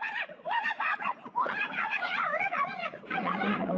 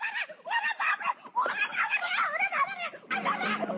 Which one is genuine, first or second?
second